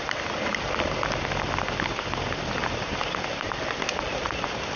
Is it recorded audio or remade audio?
recorded